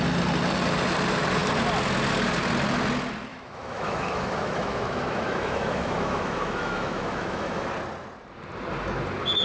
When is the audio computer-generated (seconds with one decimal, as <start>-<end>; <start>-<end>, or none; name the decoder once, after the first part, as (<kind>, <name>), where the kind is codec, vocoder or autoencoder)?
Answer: 3.3-7.7 (autoencoder, DAC-VAE)